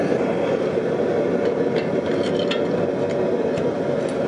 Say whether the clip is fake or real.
real